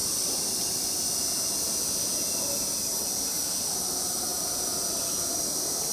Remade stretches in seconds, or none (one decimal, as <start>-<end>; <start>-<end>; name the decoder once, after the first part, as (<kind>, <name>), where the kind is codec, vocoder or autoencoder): none

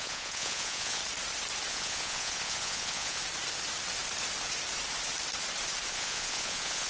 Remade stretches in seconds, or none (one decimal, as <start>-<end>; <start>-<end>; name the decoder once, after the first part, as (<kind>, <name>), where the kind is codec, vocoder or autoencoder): 0.0-1.0 (vocoder, Vocos); 1.7-3.2; 5.9-6.9

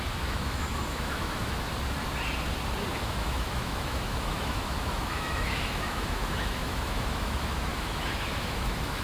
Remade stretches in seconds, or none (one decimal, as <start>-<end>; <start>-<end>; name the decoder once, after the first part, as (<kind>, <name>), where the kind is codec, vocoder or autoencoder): 0.0-1.7 (autoencoder, DAC-VAE); 2.9-9.0

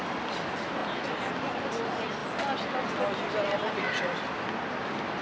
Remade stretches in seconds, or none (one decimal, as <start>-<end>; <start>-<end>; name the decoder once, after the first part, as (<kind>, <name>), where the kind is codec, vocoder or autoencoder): none

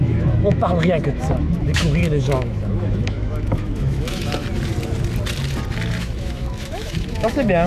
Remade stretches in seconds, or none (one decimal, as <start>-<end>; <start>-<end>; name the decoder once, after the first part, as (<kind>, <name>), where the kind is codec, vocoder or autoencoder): 0.0-4.4 (autoencoder, DAC-VAE); 6.0-7.7

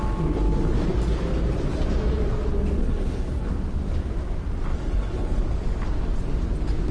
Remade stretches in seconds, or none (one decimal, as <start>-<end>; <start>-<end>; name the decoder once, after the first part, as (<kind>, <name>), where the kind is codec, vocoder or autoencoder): 2.8-3.5 (codec, HILCodec); 4.7-5.4

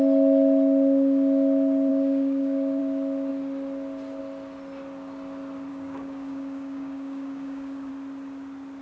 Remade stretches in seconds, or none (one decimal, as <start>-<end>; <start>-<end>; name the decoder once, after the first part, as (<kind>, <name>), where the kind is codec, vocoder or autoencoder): 1.9-2.8 (codec, DAC); 5.7-7.9

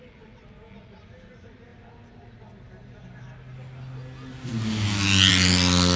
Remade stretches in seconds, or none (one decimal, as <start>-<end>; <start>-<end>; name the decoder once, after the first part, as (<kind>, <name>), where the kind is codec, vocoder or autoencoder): none